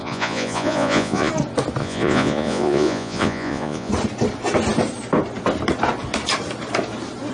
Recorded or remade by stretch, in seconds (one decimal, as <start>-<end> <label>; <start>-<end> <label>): 0.0-1.3 remade; 1.3-1.8 recorded; 1.8-3.9 remade; 3.9-7.3 recorded